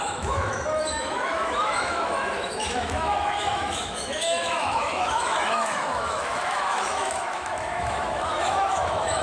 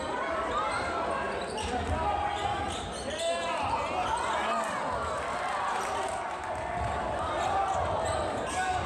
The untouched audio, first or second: second